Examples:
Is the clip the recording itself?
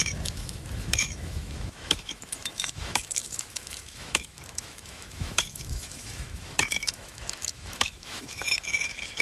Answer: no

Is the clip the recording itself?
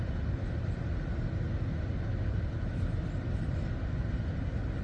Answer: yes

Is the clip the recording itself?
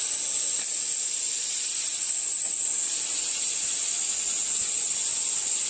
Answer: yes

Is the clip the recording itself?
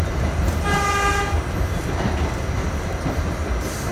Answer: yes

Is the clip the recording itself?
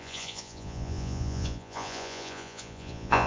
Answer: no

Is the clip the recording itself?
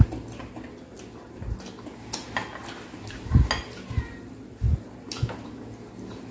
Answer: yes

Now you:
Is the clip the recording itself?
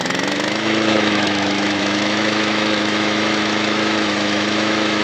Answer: no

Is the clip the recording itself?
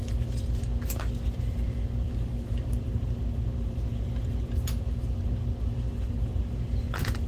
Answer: yes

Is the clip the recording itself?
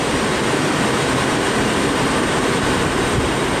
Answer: yes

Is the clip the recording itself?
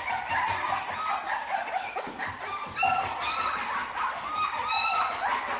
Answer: yes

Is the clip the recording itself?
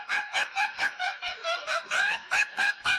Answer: no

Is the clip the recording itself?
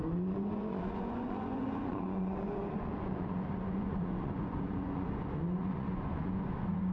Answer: no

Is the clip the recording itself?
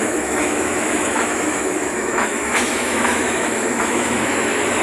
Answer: no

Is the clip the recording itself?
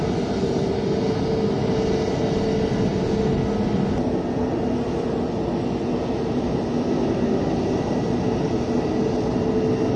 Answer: yes